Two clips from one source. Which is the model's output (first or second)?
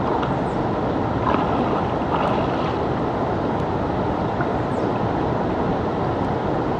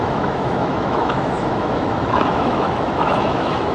second